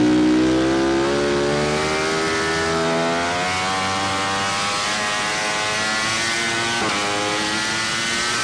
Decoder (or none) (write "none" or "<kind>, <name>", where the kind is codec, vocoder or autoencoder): none